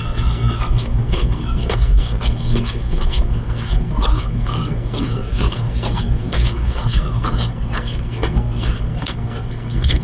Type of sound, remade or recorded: remade